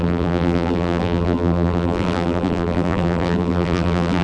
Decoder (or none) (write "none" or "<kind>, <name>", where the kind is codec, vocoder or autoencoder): vocoder, BigVGAN v2